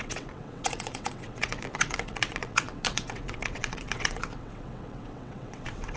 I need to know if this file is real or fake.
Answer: fake